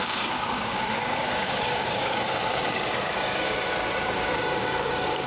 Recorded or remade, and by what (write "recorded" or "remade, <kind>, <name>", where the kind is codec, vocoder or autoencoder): remade, codec, DAC